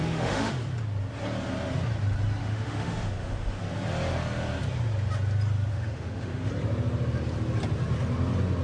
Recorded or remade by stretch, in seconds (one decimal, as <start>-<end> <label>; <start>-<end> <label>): 0.0-0.5 remade; 0.5-2.4 recorded; 2.4-3.6 remade; 3.6-5.7 recorded; 5.7-6.5 remade; 6.5-8.6 recorded